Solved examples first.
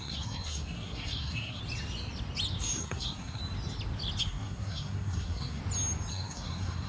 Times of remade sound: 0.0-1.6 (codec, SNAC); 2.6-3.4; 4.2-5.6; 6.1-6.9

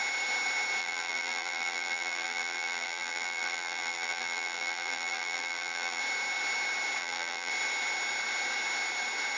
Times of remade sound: 0.8-6.0 (vocoder, BigVGAN v2); 7.0-7.5